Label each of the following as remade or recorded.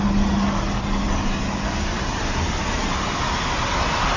recorded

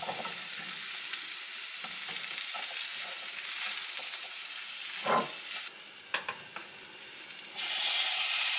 recorded